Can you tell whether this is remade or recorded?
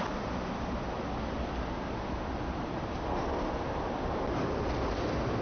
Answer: recorded